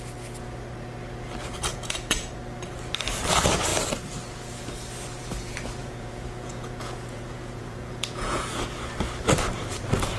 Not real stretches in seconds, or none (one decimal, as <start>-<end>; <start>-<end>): 1.7-2.3; 5.8-8.6